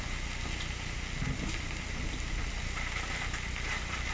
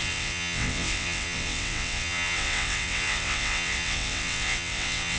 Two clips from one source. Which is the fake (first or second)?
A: second